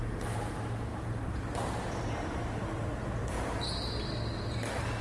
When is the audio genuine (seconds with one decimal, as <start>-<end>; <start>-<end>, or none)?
0.0-5.0